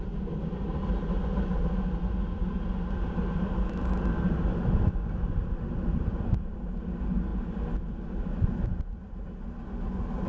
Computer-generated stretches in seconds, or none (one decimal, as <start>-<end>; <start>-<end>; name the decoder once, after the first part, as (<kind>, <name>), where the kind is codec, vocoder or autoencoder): none